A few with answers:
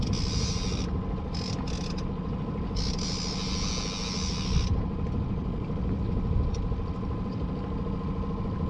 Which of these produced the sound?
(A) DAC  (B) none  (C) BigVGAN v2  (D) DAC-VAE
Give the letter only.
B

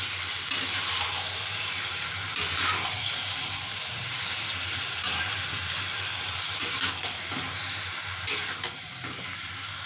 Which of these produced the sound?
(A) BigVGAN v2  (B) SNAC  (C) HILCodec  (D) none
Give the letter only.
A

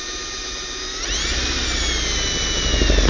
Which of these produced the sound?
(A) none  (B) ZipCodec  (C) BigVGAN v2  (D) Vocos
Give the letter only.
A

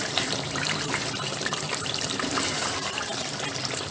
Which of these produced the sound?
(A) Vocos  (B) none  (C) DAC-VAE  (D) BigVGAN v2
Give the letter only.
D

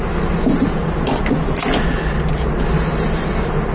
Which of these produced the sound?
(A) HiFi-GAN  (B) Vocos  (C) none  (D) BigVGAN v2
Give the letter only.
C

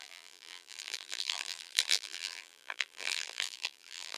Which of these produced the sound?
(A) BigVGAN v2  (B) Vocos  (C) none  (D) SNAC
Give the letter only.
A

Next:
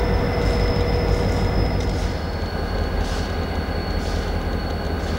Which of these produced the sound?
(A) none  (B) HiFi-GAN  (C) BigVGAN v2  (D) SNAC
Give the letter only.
A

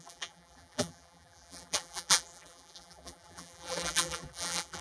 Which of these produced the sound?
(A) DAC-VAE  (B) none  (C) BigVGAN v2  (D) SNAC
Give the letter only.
C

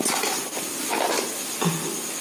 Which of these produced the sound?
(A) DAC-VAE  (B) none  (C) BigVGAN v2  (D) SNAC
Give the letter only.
B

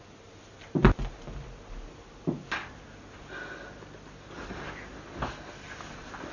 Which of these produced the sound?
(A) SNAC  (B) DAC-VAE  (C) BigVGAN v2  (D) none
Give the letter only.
D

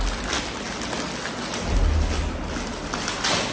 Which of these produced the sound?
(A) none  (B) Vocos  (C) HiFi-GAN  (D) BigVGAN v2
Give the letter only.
A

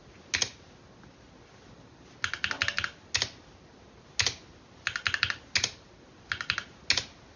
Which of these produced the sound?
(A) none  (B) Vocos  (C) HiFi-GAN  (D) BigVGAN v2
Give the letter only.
A